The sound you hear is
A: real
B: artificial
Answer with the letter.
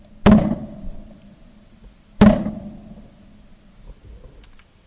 A